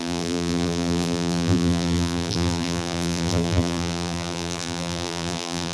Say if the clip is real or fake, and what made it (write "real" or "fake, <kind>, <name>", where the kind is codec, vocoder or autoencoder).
fake, vocoder, BigVGAN v2